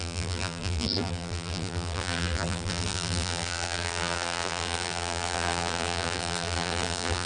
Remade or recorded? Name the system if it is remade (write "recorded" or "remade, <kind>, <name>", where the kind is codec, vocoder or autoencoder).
remade, vocoder, BigVGAN v2